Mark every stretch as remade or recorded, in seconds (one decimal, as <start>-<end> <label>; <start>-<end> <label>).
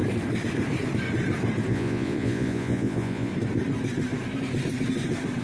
0.0-1.7 recorded; 1.7-3.3 remade; 3.3-5.4 recorded